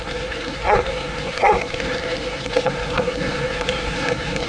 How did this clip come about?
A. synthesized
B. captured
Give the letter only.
A